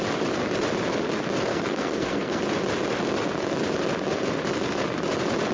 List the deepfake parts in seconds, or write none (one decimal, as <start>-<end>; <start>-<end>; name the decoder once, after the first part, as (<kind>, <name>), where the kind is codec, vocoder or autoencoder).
1.5-2.4 (codec, SNAC)